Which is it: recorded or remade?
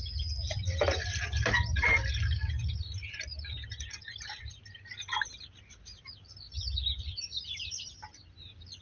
remade